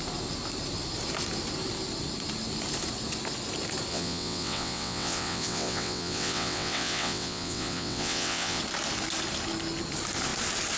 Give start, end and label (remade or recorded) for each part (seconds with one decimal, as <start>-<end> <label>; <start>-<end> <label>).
0.0-3.9 recorded; 3.9-8.6 remade; 8.6-10.8 recorded